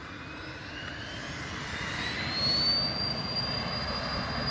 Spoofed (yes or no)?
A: no